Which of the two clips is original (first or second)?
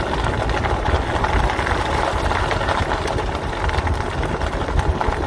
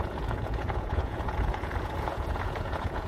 first